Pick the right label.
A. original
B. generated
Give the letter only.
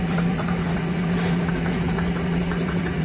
B